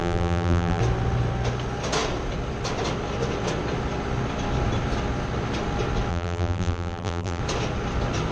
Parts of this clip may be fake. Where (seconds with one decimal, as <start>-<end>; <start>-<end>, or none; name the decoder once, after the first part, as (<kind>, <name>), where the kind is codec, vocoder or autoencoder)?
0.0-0.8 (vocoder, BigVGAN v2); 6.1-7.4